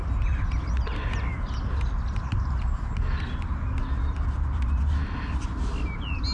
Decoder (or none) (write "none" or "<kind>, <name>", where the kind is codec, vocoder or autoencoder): none